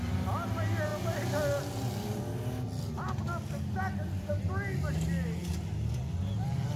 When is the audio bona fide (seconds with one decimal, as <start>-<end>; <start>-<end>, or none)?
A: 0.0-6.8